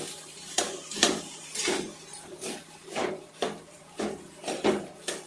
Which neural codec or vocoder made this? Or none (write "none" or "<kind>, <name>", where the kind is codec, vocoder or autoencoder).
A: vocoder, BigVGAN v2